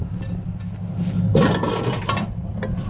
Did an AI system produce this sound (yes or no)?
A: no